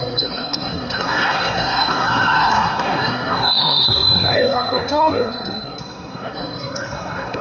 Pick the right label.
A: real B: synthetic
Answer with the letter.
B